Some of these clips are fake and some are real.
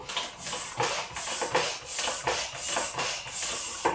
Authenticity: real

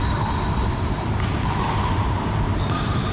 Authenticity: fake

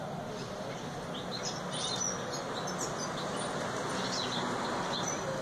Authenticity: real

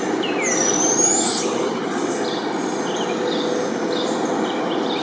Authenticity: real